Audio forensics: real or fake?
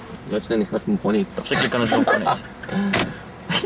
real